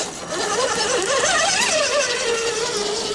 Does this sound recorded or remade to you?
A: recorded